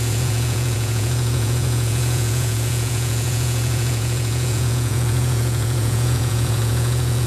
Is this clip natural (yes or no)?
no